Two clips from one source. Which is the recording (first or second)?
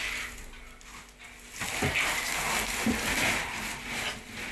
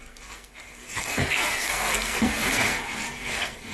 first